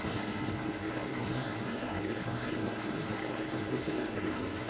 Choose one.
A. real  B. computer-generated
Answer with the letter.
B